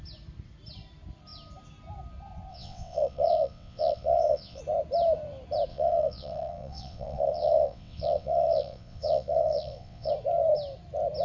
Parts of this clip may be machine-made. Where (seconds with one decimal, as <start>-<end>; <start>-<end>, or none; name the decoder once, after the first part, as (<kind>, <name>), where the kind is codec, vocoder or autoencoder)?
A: 2.5-4.6 (vocoder, WaveNeXt); 5.7-10.1